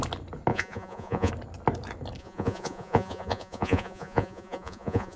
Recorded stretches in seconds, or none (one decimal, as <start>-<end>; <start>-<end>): 0.0-0.5; 1.3-2.2

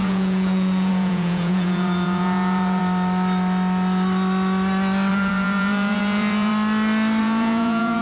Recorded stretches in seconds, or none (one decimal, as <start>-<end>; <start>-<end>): 2.8-5.1; 6.5-7.2

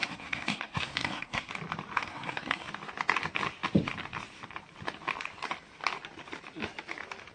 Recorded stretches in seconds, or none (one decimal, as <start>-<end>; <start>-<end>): 1.5-2.0; 2.7-7.3

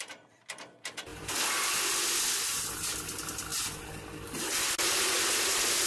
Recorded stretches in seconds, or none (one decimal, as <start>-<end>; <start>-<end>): 0.0-5.9

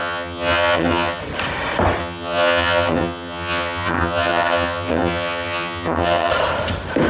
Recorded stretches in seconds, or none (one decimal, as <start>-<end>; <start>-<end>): 1.2-2.0; 6.3-7.1

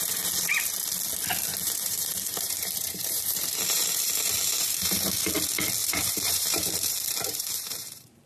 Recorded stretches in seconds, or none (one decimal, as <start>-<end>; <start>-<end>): 0.0-1.5; 5.2-5.8

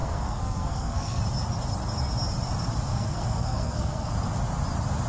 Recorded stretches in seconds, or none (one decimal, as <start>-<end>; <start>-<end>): 1.2-2.9; 4.1-5.1